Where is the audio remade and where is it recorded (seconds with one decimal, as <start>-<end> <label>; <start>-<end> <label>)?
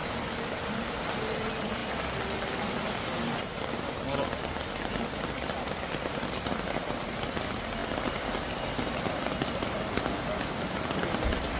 0.0-11.6 recorded